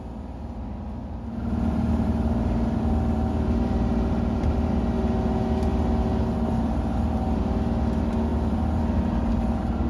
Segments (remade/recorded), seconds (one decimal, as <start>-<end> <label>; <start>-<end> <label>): 0.0-1.0 recorded; 1.0-4.7 remade; 4.7-8.3 recorded; 8.3-9.0 remade; 9.0-9.9 recorded